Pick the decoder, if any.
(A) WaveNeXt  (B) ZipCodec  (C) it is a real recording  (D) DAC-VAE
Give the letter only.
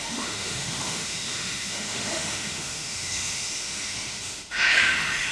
D